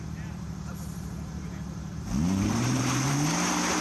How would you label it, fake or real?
fake